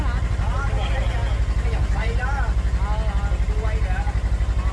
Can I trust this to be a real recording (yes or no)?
yes